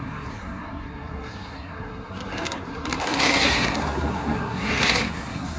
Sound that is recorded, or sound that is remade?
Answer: remade